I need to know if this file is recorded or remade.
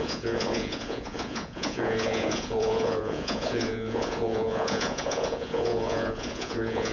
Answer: remade